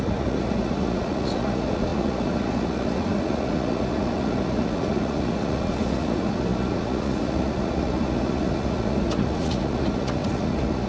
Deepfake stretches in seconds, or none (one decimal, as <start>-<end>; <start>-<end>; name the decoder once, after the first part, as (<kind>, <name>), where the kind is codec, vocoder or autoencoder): 0.0-10.9 (vocoder, Vocos)